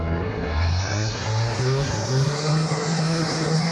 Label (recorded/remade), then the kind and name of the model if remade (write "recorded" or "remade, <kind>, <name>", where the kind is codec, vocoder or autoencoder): remade, codec, SNAC